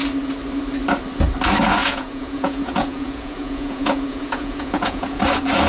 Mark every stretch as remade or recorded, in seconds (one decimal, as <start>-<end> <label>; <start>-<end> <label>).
0.0-1.8 recorded; 1.8-5.2 remade; 5.2-5.7 recorded